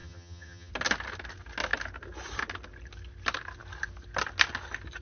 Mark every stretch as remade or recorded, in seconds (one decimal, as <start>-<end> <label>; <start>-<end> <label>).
0.0-0.7 remade; 0.7-5.0 recorded